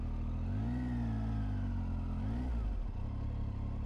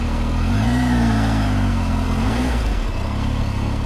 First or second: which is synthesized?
second